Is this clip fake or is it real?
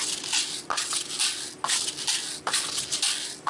real